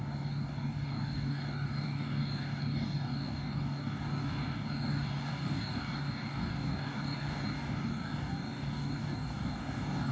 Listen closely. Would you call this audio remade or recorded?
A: remade